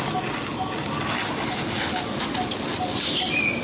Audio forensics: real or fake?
real